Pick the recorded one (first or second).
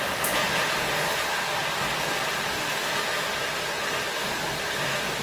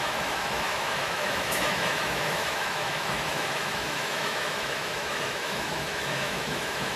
first